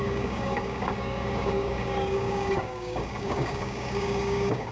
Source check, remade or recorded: remade